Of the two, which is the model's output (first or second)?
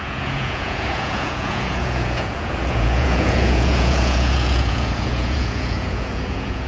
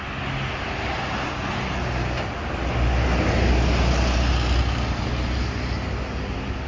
first